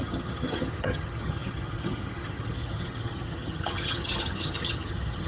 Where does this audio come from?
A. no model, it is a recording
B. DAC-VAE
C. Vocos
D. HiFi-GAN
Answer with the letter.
D